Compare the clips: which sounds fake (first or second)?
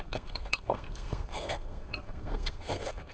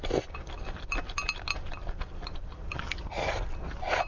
first